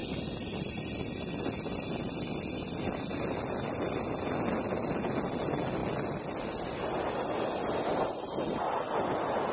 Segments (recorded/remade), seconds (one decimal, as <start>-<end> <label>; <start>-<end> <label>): 0.0-9.5 recorded